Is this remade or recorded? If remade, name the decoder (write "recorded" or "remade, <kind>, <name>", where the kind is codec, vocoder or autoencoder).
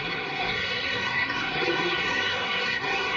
remade, codec, SNAC